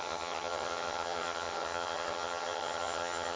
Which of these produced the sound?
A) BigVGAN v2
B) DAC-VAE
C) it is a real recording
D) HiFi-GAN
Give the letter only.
D